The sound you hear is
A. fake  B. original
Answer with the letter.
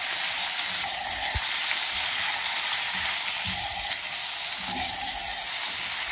B